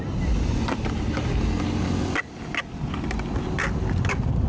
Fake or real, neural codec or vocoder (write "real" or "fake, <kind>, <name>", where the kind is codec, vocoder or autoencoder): real